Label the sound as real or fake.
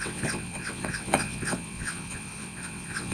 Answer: fake